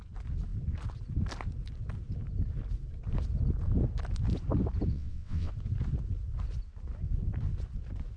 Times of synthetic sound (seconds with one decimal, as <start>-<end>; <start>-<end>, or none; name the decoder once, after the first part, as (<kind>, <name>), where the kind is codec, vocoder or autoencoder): 4.9-5.5 (vocoder, WaveNeXt)